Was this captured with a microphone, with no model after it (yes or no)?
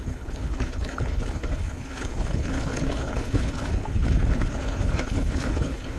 no